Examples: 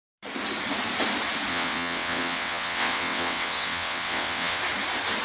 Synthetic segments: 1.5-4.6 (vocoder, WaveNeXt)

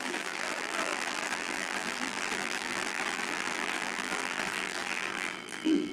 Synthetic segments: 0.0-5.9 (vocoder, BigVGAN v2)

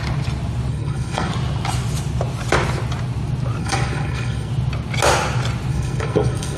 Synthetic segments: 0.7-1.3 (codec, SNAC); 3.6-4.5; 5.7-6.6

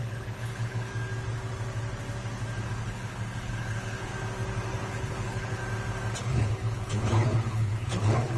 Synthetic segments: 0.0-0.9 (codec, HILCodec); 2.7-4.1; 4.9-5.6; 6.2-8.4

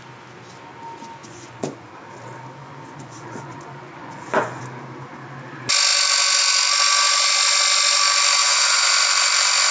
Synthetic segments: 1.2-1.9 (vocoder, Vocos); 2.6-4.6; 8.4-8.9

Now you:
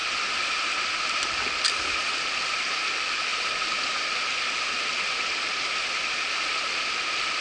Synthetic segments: none

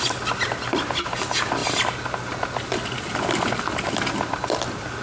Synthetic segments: none